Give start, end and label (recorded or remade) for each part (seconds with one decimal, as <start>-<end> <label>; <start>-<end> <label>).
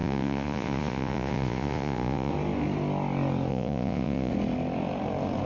0.0-2.3 remade; 2.3-3.5 recorded; 3.5-4.3 remade; 4.3-5.5 recorded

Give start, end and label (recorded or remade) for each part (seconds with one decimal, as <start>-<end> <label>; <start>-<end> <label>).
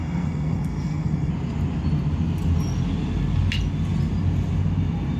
0.0-1.3 remade; 1.3-5.2 recorded